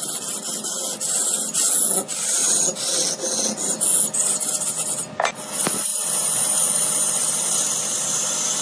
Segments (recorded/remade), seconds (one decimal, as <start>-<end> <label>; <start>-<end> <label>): 0.0-5.9 recorded; 5.9-7.1 remade; 7.1-8.6 recorded